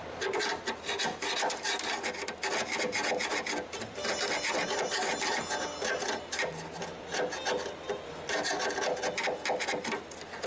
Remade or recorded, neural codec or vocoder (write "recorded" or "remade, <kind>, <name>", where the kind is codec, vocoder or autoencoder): recorded